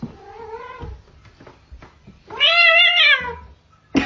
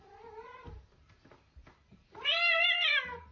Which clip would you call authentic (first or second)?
first